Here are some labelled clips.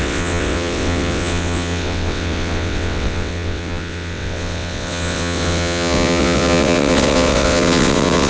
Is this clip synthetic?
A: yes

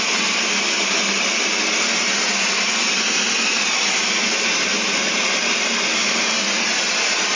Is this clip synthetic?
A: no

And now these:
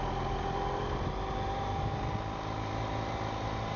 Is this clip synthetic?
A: no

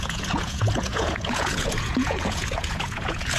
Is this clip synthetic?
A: yes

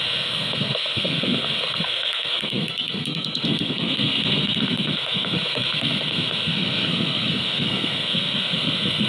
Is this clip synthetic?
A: yes